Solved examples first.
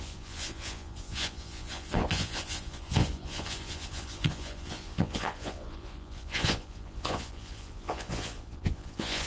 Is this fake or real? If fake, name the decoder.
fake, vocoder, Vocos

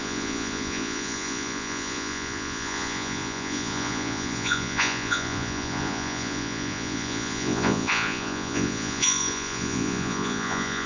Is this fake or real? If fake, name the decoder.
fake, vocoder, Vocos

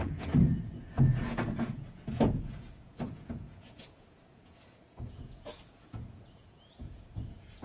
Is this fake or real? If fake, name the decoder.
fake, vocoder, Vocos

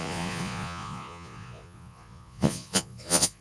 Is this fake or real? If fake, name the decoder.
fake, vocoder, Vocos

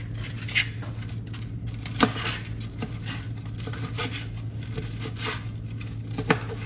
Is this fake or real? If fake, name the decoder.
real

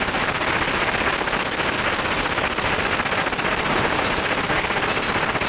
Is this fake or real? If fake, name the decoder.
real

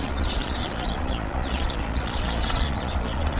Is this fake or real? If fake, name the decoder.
fake, vocoder, Vocos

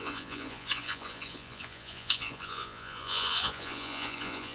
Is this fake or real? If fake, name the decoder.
fake, vocoder, Vocos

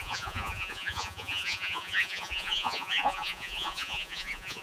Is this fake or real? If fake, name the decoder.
fake, vocoder, Vocos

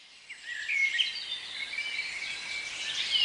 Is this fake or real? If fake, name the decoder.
real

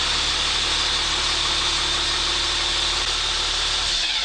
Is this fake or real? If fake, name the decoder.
real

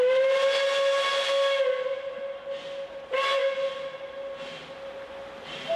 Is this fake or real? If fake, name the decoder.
real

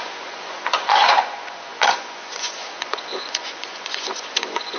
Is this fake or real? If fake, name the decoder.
fake, vocoder, Vocos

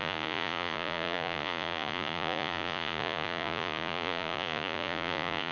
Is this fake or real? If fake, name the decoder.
fake, vocoder, Vocos